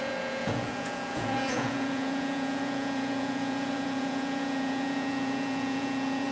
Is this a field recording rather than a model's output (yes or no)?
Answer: no